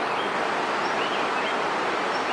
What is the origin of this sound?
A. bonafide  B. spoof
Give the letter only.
A